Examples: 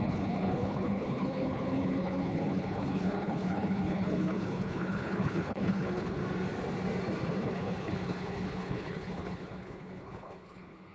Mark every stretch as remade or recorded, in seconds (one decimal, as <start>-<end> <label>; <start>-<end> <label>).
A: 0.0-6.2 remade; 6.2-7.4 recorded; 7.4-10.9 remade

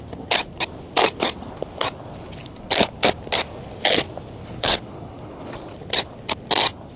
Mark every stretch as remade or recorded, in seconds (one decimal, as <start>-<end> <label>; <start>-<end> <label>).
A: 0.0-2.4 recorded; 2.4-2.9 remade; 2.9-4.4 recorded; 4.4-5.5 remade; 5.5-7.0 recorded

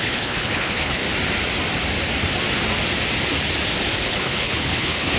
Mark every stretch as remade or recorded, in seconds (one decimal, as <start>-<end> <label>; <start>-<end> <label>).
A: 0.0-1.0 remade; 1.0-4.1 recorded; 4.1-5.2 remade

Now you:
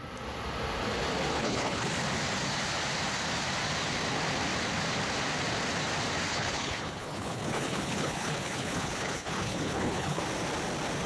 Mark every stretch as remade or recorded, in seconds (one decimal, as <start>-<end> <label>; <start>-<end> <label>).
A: 0.0-1.3 recorded; 1.3-1.9 remade; 1.9-6.3 recorded; 6.3-10.2 remade; 10.2-11.1 recorded

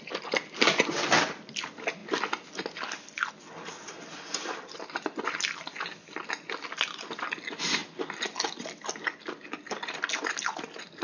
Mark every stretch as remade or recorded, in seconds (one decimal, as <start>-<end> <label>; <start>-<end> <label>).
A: 0.0-11.0 recorded

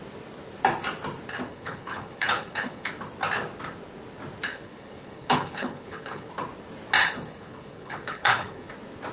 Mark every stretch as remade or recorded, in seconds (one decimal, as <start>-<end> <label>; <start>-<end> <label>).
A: 0.0-1.5 recorded; 1.5-2.9 remade; 2.9-4.5 recorded; 4.5-6.3 remade; 6.3-7.0 recorded; 7.0-8.7 remade; 8.7-9.1 recorded

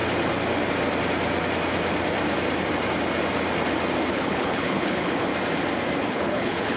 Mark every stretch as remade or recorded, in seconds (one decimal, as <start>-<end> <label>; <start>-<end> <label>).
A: 0.0-4.1 recorded; 4.1-5.3 remade; 5.3-6.1 recorded; 6.1-6.8 remade

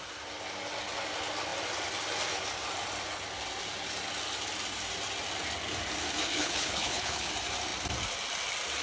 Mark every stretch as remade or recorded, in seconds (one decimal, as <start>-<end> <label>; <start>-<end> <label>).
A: 0.0-6.3 recorded; 6.3-7.3 remade; 7.3-8.8 recorded